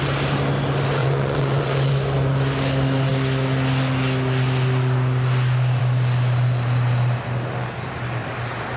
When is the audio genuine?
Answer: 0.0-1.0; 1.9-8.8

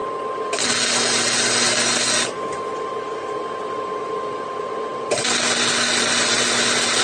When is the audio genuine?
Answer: 0.0-7.0

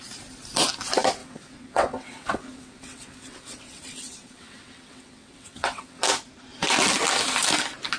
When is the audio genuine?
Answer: 0.0-1.2; 6.0-8.0